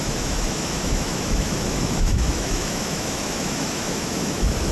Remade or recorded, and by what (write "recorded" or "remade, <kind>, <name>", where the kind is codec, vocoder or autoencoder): remade, autoencoder, DAC-VAE